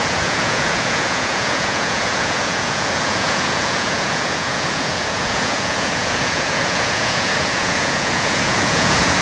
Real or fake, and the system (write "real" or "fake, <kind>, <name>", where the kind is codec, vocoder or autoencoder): fake, vocoder, Vocos